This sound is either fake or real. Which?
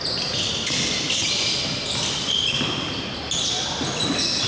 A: real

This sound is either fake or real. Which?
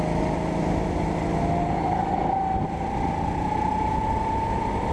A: real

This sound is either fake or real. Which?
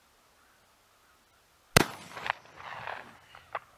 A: real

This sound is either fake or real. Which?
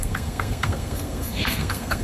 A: fake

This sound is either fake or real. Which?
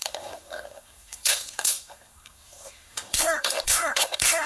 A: fake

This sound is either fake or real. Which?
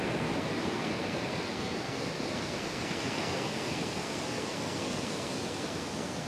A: fake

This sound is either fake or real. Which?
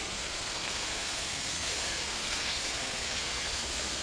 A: fake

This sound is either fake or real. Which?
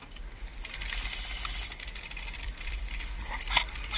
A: real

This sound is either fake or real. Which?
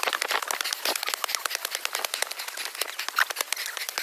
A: real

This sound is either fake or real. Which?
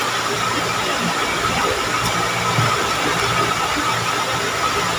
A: real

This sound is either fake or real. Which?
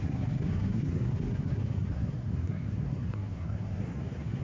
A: fake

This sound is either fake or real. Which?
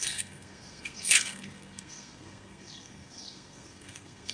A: fake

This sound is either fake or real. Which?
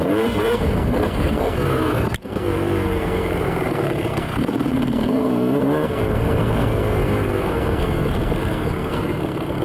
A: fake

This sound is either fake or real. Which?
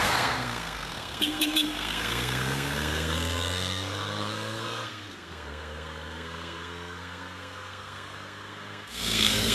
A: fake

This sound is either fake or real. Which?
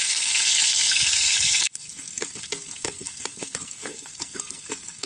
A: fake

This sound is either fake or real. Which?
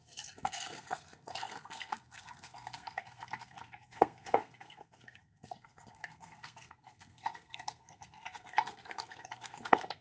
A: fake